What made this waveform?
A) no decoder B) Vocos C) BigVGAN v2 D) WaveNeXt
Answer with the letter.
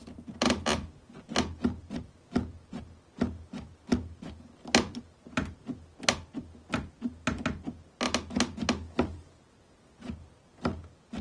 A